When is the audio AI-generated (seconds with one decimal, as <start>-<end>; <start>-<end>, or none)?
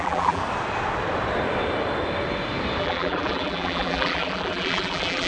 0.0-0.4; 2.8-5.3